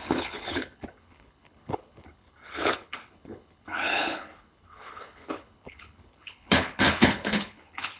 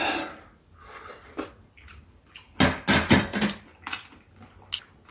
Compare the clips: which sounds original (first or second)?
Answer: second